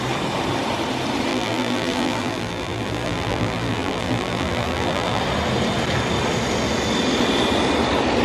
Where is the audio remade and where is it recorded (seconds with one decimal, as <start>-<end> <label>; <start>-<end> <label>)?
0.0-1.3 recorded; 1.3-5.2 remade; 5.2-8.2 recorded